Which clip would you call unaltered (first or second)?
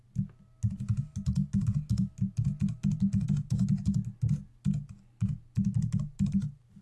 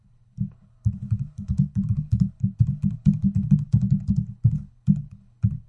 first